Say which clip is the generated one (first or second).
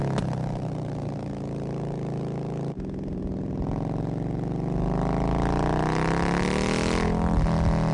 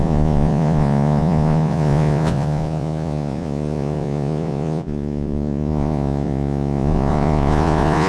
second